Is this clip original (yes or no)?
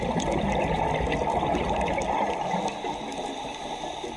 yes